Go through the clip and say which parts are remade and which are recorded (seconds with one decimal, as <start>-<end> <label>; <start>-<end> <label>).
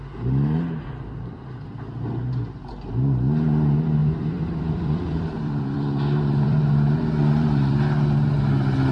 0.0-4.0 recorded; 4.0-6.7 remade; 6.7-8.9 recorded